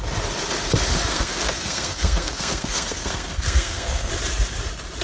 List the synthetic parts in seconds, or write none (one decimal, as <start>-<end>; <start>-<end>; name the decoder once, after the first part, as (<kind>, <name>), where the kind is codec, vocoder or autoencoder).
1.1-4.1 (codec, SNAC)